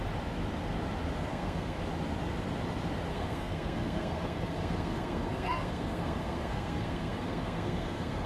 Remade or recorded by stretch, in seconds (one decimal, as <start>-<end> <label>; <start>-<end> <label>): 0.0-1.3 recorded; 1.3-1.8 remade; 1.8-3.1 recorded; 3.1-8.3 remade

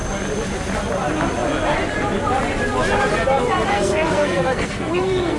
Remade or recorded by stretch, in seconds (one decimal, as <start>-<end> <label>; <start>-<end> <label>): 0.0-3.7 recorded; 3.7-5.4 remade

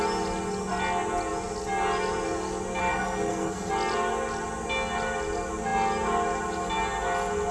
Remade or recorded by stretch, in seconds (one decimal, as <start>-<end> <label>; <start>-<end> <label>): 0.0-2.8 recorded; 2.8-3.7 remade; 3.7-7.5 recorded

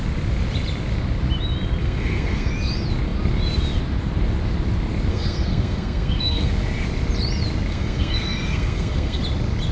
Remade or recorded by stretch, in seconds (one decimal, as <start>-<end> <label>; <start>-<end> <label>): 0.0-1.8 recorded; 1.8-2.5 remade; 2.5-5.1 recorded; 5.1-6.5 remade; 6.5-7.7 recorded; 7.7-9.2 remade; 9.2-9.7 recorded

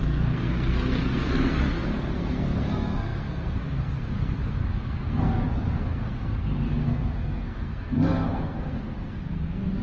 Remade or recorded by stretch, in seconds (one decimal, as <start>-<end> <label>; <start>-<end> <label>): 0.0-9.8 remade

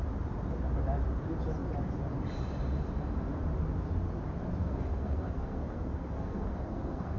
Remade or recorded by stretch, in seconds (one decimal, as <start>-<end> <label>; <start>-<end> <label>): 0.0-4.6 recorded; 4.6-7.2 remade